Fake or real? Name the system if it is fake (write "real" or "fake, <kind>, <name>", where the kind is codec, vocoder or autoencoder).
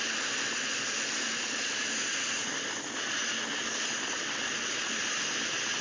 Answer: real